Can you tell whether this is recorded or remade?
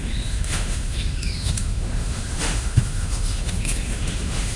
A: remade